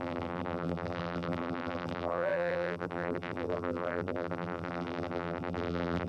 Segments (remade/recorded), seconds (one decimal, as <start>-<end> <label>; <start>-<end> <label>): 0.0-6.1 remade